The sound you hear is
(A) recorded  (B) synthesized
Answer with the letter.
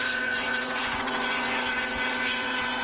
B